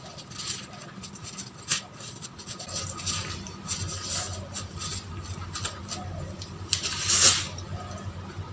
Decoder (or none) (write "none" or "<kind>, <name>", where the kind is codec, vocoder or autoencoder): none